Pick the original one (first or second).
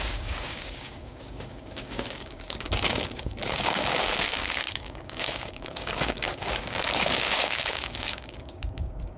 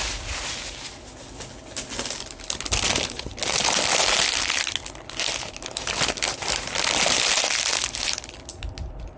second